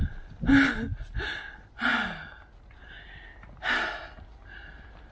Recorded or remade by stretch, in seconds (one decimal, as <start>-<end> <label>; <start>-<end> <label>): 0.0-5.1 recorded